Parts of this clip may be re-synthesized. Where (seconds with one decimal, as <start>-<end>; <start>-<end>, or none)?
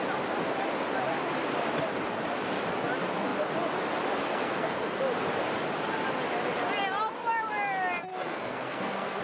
4.3-5.0; 8.1-9.2